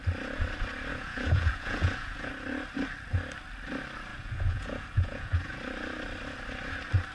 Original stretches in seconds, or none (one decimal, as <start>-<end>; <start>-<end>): 0.0-0.9; 2.3-4.1; 5.6-7.1